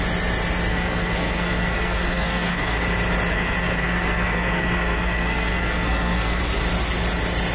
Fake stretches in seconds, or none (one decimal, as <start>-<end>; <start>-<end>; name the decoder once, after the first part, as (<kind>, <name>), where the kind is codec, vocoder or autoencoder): 0.7-2.8 (codec, SNAC); 3.3-6.4